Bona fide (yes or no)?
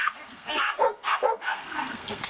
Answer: no